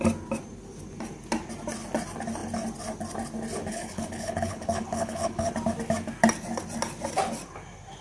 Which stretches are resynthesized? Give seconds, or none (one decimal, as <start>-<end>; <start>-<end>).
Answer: 3.7-5.5